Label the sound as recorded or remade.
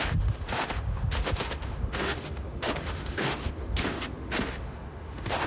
remade